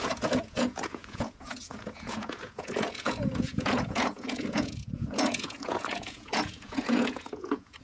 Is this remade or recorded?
remade